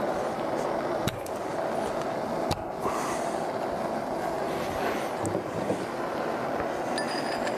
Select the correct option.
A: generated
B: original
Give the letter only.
B